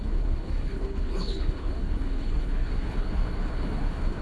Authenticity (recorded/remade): remade